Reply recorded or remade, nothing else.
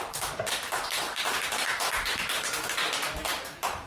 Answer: remade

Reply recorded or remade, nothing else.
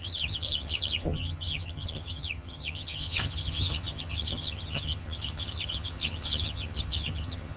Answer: remade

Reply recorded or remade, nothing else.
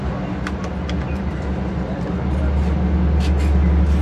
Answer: recorded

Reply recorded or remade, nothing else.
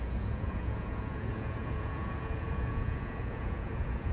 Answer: remade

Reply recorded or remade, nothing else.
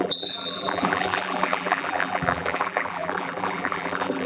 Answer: remade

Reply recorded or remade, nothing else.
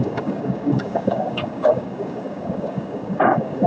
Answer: remade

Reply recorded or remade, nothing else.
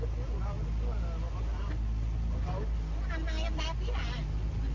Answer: recorded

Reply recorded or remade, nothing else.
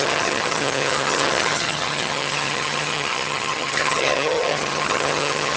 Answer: remade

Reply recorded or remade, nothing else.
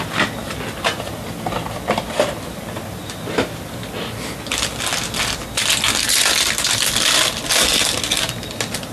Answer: recorded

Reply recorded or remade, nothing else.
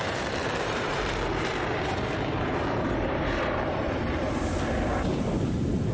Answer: remade